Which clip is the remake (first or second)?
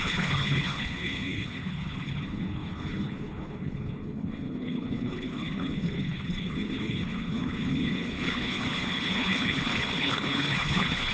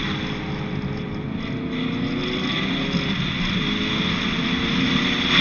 first